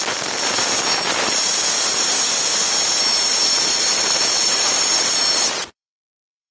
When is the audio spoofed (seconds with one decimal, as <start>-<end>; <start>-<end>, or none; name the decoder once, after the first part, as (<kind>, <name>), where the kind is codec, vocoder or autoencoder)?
3.1-6.5 (vocoder, BigVGAN v2)

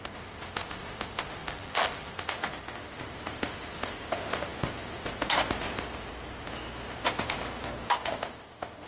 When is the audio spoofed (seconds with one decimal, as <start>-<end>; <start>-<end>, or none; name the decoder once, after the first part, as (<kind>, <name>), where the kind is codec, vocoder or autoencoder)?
1.4-2.1 (vocoder, BigVGAN v2)

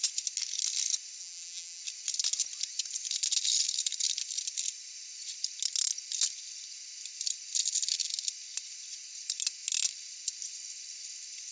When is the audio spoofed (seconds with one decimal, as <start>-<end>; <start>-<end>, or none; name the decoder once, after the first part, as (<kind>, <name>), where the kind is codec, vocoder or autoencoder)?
1.2-1.8 (vocoder, BigVGAN v2)

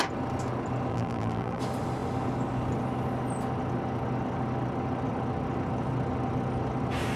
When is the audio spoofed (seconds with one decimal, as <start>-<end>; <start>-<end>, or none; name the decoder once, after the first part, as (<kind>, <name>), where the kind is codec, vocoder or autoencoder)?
0.9-1.6 (vocoder, BigVGAN v2)

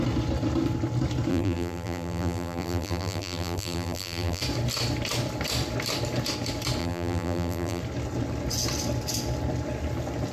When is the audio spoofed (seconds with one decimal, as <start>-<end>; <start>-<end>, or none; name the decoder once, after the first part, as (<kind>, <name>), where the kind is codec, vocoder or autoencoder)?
1.3-4.4 (vocoder, BigVGAN v2); 6.8-7.8

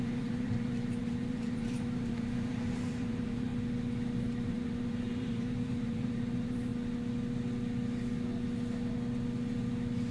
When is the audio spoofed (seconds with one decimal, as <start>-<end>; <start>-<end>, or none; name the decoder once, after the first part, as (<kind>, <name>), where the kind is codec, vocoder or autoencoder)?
0.0-3.5 (vocoder, BigVGAN v2); 4.2-6.7

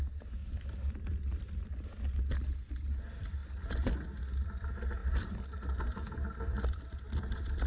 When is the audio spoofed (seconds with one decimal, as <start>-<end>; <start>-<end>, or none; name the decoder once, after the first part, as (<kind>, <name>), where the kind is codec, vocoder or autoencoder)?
0.4-1.6 (vocoder, BigVGAN v2); 5.0-6.2

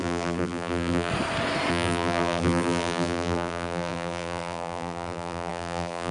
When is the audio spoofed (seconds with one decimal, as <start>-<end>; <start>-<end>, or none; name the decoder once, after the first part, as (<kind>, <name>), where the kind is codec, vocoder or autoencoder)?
0.0-1.1 (vocoder, BigVGAN v2); 1.7-6.1